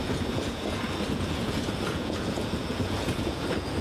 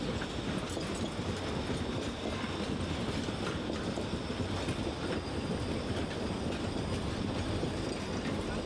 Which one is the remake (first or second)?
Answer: first